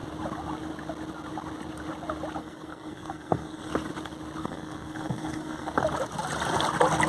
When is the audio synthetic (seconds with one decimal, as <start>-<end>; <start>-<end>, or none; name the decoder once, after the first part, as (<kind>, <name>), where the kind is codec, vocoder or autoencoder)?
2.4-3.7 (codec, SNAC); 4.4-5.7

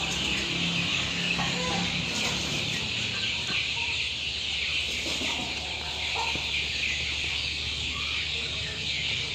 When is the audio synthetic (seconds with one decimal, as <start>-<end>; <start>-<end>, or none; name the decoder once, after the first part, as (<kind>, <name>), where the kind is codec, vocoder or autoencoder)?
0.9-2.0 (codec, DAC); 7.3-9.3

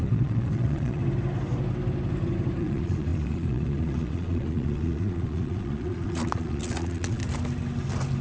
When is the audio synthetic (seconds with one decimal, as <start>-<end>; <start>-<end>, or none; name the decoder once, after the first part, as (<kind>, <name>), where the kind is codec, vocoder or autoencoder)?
0.0-1.0 (vocoder, Vocos); 2.6-7.2

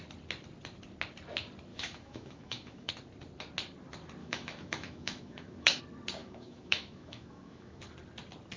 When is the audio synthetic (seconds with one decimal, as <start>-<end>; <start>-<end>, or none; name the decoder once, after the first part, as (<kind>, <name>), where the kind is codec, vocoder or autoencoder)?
1.7-2.9 (autoencoder, DAC-VAE); 4.2-5.8; 6.2-7.8

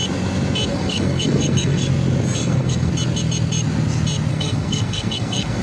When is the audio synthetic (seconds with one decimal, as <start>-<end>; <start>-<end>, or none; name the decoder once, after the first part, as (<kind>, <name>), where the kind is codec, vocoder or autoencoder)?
0.7-1.9 (codec, SNAC); 2.4-2.9; 4.3-5.6

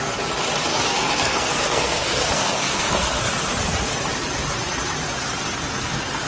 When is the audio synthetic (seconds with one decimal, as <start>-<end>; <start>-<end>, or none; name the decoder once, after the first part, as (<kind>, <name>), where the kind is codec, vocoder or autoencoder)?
0.7-3.2 (codec, SNAC)